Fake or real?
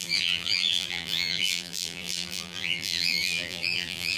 fake